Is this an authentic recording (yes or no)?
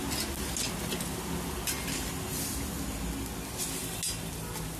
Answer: yes